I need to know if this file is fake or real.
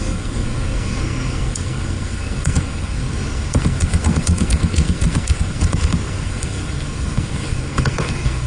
fake